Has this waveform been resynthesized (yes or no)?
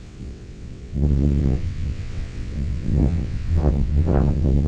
yes